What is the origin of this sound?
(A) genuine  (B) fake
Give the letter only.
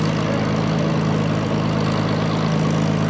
A